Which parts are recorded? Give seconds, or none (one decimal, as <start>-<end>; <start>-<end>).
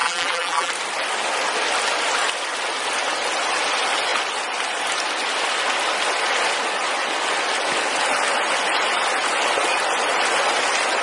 0.7-11.0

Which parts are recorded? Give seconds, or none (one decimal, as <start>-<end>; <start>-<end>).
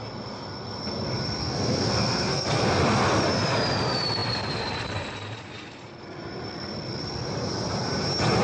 0.0-1.4; 2.8-8.4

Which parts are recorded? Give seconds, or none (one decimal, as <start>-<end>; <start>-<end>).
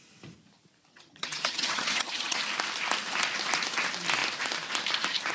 0.0-0.9; 2.4-5.3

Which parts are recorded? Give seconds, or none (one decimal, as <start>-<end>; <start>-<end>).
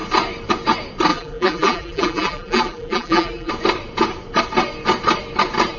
0.0-1.1; 3.5-5.8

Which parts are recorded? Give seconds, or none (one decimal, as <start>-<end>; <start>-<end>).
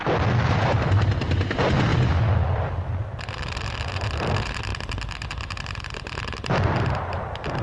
0.0-7.6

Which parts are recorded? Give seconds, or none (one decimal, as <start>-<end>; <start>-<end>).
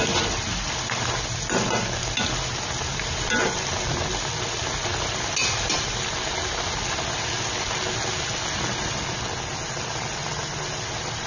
0.0-11.3